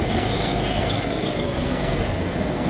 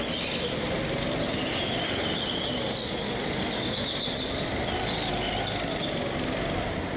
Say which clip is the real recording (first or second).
second